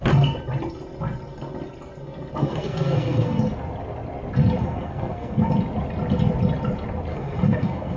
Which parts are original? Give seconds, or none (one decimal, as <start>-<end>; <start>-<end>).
0.0-2.4; 3.4-4.6; 5.5-7.1